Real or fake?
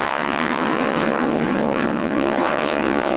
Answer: fake